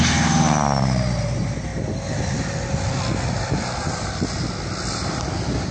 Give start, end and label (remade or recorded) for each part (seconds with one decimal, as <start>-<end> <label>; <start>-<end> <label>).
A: 0.0-1.7 remade; 1.7-5.1 recorded; 5.1-5.7 remade